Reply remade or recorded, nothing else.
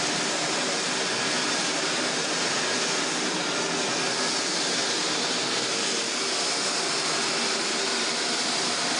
recorded